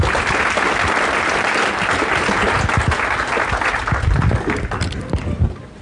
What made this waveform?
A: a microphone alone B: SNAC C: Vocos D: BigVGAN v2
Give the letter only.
A